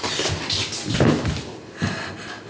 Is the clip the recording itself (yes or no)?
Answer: yes